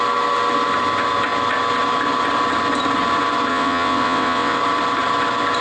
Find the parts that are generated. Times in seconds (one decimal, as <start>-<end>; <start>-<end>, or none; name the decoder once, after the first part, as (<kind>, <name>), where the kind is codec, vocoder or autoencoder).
3.5-4.6 (vocoder, WaveNeXt)